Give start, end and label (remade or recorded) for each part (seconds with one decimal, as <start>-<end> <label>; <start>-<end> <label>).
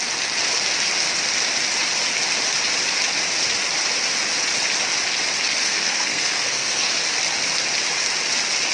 0.0-5.6 recorded; 5.6-7.0 remade; 7.0-8.7 recorded